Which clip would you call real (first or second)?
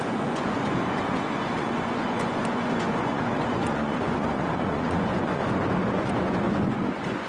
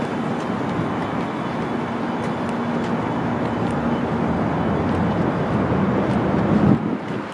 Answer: second